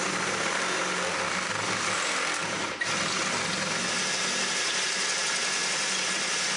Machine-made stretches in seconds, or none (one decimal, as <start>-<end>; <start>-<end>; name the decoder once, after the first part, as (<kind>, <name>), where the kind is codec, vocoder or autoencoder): none